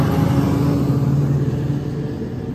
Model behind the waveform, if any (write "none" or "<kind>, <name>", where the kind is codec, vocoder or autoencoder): none